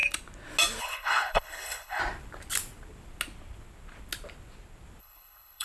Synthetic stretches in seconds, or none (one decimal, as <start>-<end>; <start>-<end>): 0.8-2.0; 5.0-5.6